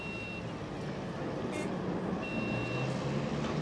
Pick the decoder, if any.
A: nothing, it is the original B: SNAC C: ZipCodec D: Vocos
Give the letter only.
A